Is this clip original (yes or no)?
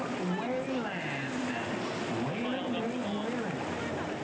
yes